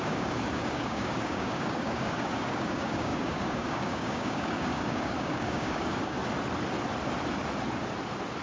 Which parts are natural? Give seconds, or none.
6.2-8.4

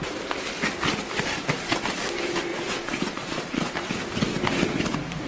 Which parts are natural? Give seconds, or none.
0.0-2.5; 3.7-5.3

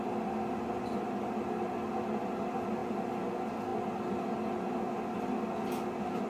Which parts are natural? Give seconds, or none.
0.0-6.3

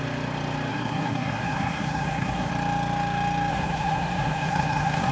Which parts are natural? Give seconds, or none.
0.0-0.7; 2.5-3.5

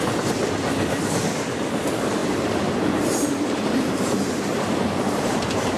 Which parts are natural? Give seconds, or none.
0.0-2.2

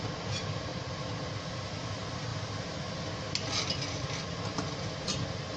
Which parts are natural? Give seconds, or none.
0.0-5.6